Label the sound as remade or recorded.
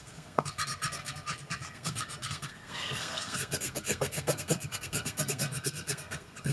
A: remade